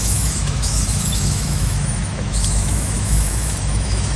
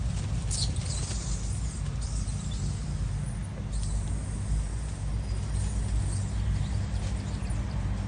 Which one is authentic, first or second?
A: second